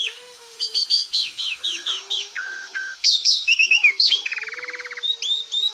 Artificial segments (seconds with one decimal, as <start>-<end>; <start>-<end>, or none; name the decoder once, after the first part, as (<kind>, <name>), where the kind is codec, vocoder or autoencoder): 0.0-4.3 (autoencoder, DAC-VAE)